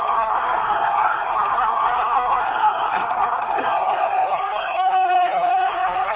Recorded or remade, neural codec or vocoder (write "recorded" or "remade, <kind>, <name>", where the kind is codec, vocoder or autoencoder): remade, codec, SNAC